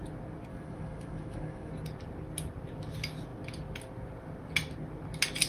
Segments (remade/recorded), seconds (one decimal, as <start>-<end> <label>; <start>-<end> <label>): 0.0-0.5 recorded; 0.5-1.7 remade; 1.7-5.5 recorded